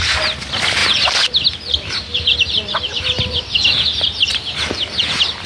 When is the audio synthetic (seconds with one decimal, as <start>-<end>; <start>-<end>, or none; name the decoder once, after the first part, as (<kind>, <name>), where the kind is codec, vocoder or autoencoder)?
0.8-1.4 (vocoder, BigVGAN v2); 2.1-3.0